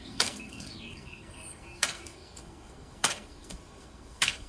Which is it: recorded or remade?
remade